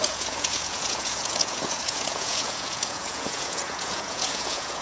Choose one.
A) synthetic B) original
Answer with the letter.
A